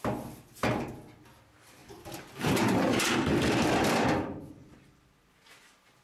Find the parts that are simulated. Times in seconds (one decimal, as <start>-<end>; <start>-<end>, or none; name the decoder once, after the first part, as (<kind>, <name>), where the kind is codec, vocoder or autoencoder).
1.8-5.4 (vocoder, BigVGAN v2)